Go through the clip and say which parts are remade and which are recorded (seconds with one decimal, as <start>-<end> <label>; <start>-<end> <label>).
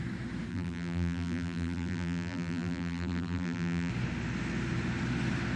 0.0-0.5 recorded; 0.5-3.9 remade; 3.9-5.6 recorded